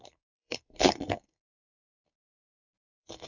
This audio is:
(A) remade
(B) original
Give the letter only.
A